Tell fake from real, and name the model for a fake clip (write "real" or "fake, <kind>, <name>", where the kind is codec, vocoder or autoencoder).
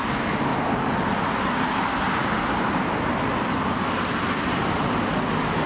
real